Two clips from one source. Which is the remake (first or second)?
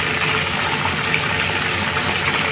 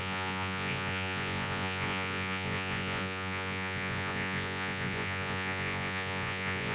second